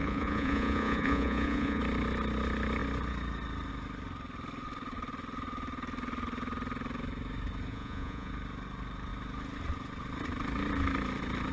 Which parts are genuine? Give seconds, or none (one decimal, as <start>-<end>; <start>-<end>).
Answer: 1.8-7.7; 8.3-11.5